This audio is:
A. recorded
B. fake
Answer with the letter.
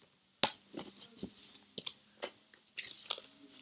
A